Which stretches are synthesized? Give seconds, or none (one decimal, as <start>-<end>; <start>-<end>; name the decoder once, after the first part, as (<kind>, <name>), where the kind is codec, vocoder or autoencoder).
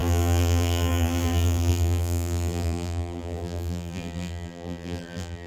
0.0-5.5 (vocoder, BigVGAN v2)